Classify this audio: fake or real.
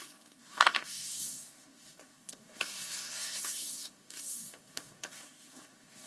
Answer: fake